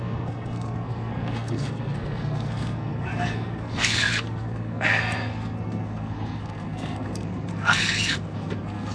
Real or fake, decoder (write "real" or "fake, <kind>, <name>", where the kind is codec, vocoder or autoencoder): fake, codec, SNAC